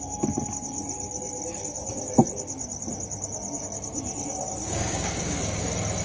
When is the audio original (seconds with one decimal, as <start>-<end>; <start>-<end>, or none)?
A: 0.0-4.6; 5.6-6.0